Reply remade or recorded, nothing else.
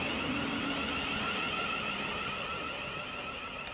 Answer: recorded